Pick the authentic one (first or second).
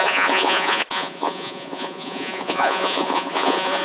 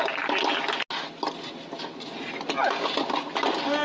second